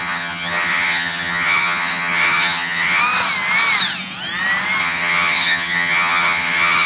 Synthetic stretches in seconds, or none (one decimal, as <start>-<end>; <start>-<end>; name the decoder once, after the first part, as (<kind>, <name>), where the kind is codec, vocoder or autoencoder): 0.0-3.0 (vocoder, HiFi-GAN); 4.8-6.9